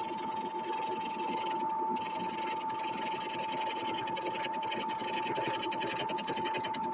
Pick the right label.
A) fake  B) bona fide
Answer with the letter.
B